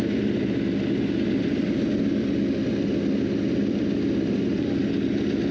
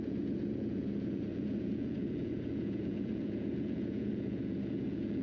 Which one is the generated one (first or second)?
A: second